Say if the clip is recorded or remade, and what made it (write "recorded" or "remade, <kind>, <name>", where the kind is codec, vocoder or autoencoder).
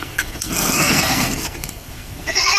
remade, codec, SNAC